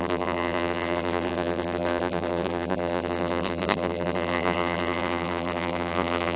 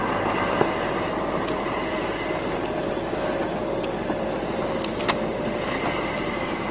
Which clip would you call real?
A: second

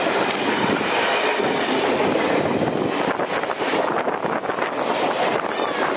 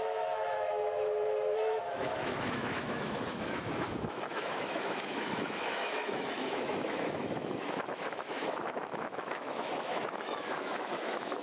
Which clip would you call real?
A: first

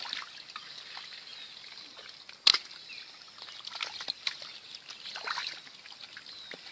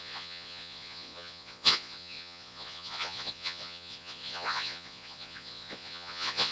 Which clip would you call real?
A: first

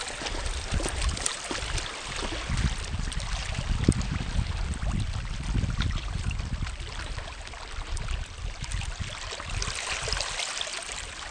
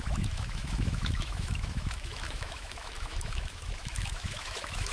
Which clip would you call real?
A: first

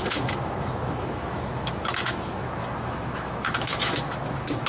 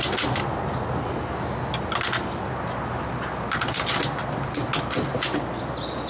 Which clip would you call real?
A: second